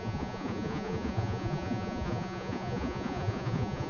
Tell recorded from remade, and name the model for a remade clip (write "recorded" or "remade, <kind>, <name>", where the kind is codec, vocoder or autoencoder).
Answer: remade, vocoder, Vocos